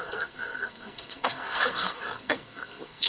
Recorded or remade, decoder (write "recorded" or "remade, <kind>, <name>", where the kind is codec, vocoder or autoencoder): remade, codec, SNAC